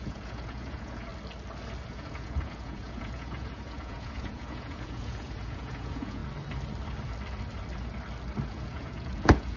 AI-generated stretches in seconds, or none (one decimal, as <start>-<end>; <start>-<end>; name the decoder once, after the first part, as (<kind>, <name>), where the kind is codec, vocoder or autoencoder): 0.0-1.1 (vocoder, Vocos); 1.9-6.2; 8.5-9.6